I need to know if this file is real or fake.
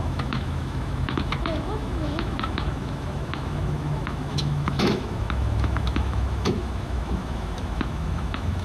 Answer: fake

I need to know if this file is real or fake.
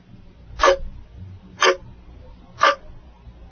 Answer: real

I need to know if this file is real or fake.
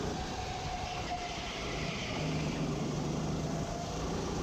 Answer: real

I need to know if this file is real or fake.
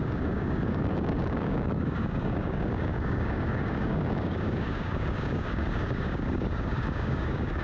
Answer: fake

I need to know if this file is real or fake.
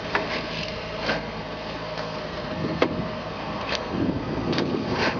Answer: fake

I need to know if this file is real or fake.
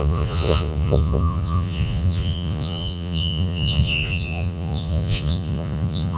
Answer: fake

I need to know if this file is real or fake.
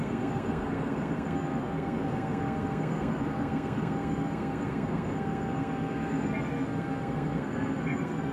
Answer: fake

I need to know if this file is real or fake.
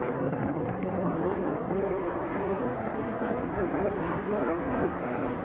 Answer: fake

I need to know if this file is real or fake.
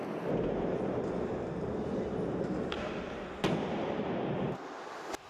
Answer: real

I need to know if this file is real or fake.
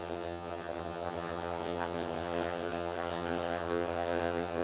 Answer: fake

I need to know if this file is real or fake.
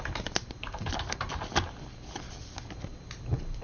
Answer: fake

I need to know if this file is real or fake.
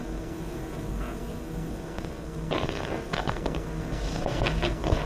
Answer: fake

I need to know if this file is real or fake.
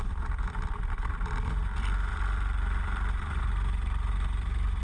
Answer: fake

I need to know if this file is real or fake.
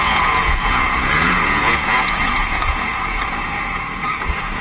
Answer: fake